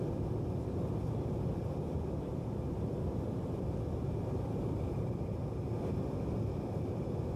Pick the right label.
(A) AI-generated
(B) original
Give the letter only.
B